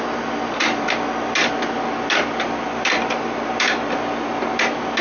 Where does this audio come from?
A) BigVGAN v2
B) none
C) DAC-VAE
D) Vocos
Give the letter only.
B